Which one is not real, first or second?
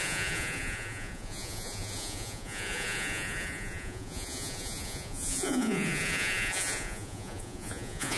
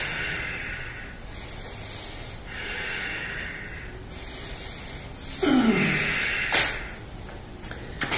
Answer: first